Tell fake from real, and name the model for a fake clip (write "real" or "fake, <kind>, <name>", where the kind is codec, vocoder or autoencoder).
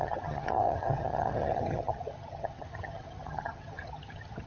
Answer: fake, vocoder, HiFi-GAN